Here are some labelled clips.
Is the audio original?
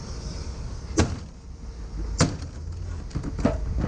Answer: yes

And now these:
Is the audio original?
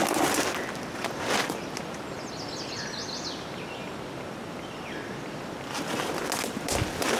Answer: yes